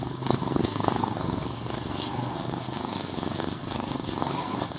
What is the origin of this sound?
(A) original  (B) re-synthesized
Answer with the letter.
B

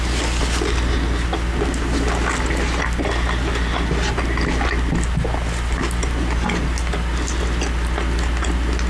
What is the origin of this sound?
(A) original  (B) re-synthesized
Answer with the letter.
A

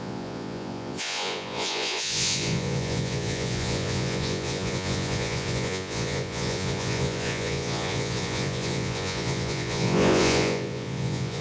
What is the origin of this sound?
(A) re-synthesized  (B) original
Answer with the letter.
A